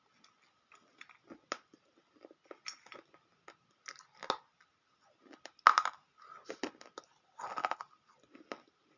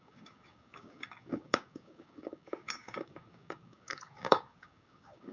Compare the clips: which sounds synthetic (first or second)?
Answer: second